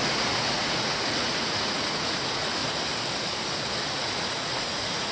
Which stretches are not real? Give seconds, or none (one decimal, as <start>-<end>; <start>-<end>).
0.0-2.6; 3.9-5.1